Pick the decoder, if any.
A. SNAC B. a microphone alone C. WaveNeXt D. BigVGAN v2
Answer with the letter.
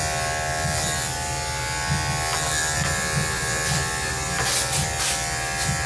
B